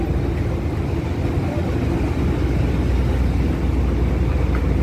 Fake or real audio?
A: real